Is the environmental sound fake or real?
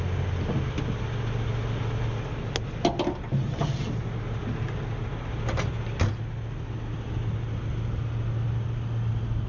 real